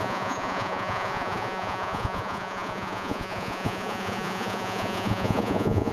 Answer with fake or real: fake